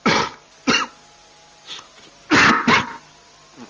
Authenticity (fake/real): real